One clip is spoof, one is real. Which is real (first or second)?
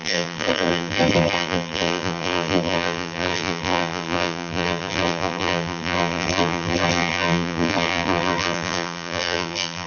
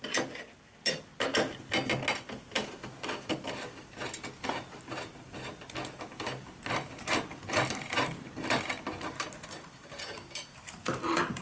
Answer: second